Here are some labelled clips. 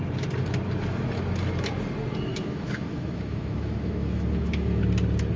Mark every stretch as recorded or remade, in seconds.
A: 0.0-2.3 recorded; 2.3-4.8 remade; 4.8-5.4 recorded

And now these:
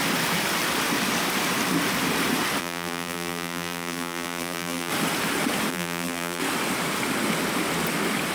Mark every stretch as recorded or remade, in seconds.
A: 0.0-2.6 recorded; 2.6-4.9 remade; 4.9-5.7 recorded; 5.7-6.4 remade; 6.4-8.3 recorded

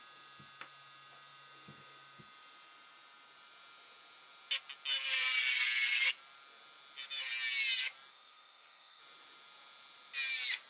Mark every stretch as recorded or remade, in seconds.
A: 0.0-8.1 recorded; 8.1-9.0 remade; 9.0-10.7 recorded

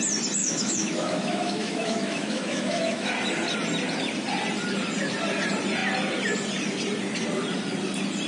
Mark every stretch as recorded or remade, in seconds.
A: 0.0-0.4 recorded; 0.4-3.1 remade; 3.1-8.3 recorded

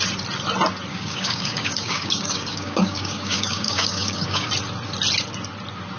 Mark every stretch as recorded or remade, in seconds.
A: 0.0-0.9 recorded; 0.9-4.5 remade; 4.5-6.0 recorded

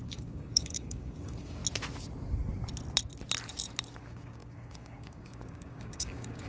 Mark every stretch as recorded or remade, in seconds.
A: 0.0-1.6 remade; 1.6-4.0 recorded; 4.0-6.5 remade